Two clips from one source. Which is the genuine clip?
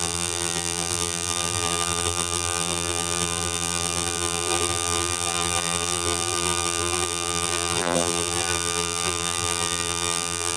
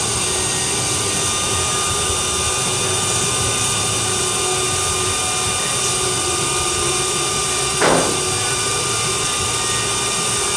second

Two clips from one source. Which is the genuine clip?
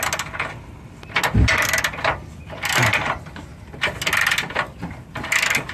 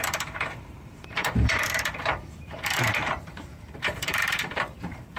first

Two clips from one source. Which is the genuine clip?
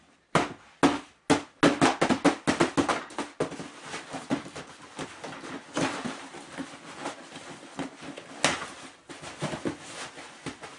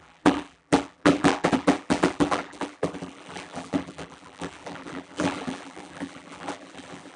first